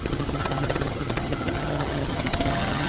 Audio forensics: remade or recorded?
remade